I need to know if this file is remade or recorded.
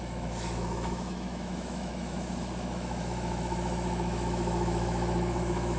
remade